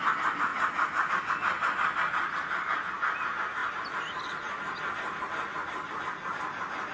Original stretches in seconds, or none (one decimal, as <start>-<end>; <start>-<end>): 0.0-0.5; 1.1-6.9